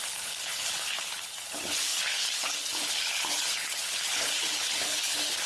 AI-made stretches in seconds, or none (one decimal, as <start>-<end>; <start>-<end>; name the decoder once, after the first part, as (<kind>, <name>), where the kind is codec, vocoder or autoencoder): 0.0-5.5 (codec, HILCodec)